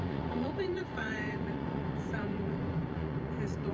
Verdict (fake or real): fake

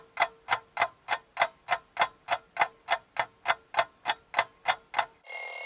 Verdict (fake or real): real